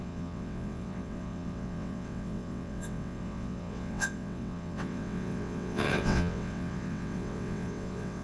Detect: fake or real fake